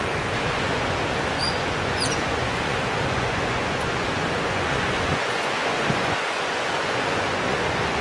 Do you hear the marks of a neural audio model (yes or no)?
yes